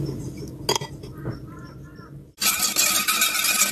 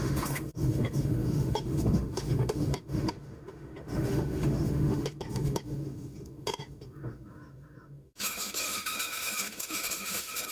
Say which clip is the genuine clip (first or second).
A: first